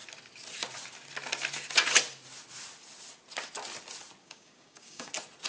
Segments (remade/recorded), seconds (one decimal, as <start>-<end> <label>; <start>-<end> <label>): 0.0-4.2 recorded; 4.2-5.1 remade; 5.1-5.5 recorded